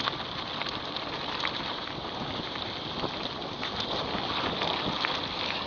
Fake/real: real